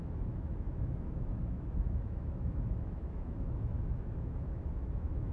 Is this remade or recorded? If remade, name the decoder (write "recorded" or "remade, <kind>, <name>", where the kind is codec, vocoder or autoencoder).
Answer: remade, autoencoder, DAC-VAE